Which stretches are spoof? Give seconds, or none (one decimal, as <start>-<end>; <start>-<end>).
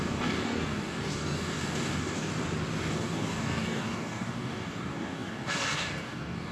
0.0-2.3; 2.9-6.5